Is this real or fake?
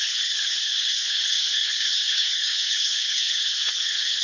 fake